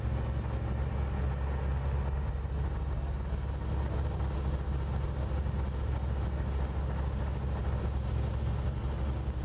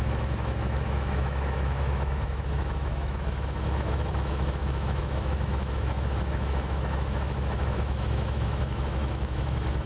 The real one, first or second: first